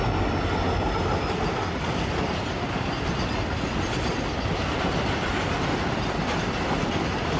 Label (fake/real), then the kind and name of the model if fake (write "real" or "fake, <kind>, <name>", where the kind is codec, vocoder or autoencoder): real